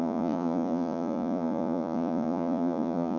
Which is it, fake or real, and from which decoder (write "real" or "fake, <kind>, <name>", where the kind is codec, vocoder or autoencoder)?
fake, vocoder, Vocos